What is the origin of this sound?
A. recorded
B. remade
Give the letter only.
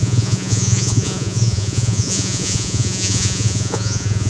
B